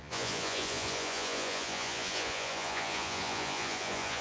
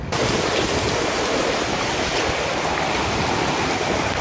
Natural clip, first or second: second